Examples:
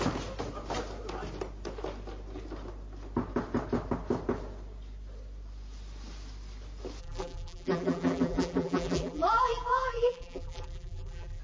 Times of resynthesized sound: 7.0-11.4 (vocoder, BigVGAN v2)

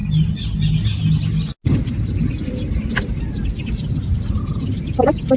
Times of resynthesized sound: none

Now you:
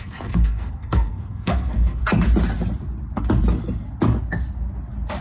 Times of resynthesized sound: 0.0-2.0 (codec, SNAC)